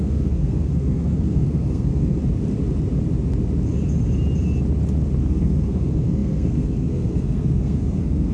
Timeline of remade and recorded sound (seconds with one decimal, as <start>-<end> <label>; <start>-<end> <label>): 0.0-2.2 remade; 2.2-5.2 recorded; 5.2-8.3 remade